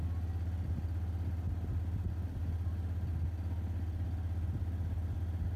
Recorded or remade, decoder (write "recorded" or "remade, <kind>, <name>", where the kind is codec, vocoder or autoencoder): recorded